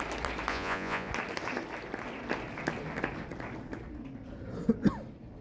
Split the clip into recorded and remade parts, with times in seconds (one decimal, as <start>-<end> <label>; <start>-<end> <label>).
0.0-0.5 recorded; 0.5-1.1 remade; 1.1-5.4 recorded